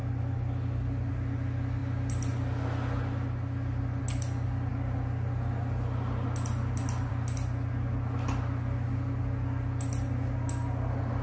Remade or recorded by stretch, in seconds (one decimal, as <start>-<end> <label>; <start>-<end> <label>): 0.0-11.2 recorded